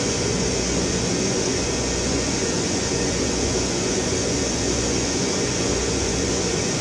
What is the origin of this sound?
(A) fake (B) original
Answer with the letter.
A